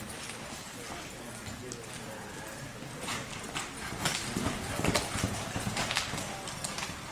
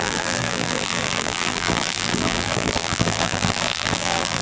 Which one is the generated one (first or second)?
second